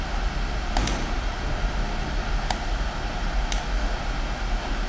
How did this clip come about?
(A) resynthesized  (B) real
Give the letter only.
B